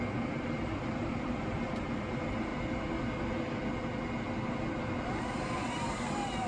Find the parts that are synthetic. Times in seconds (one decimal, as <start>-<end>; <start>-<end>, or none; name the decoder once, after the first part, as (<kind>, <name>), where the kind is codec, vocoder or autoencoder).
0.0-2.5 (vocoder, BigVGAN v2); 5.2-6.5